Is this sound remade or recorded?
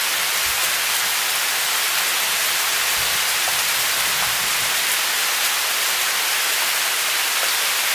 recorded